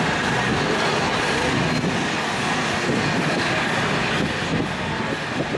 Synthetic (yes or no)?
no